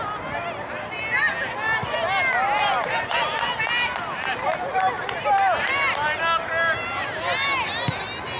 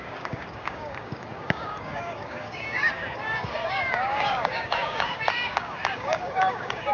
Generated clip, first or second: second